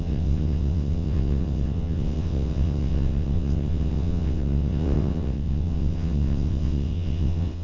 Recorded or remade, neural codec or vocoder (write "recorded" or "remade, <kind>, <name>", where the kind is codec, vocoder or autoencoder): remade, vocoder, WaveNeXt